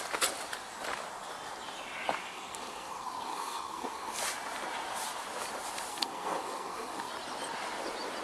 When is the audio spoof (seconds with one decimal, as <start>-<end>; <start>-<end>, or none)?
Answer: 2.2-4.2; 5.9-7.1